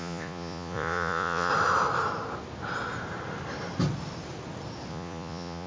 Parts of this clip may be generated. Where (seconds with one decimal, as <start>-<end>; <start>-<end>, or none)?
0.0-1.5; 4.9-5.7